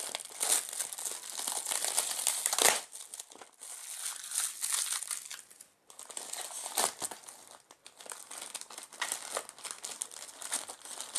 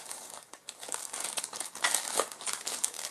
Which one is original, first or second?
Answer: first